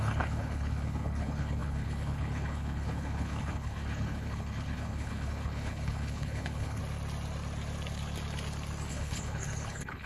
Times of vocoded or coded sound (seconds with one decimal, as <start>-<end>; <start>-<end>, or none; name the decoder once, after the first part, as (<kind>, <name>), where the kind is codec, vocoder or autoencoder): 0.0-6.8 (codec, HILCodec); 8.9-10.1